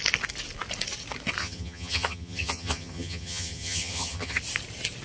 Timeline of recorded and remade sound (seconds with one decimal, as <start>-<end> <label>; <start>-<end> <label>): 0.0-1.4 recorded; 1.4-4.4 remade; 4.4-5.0 recorded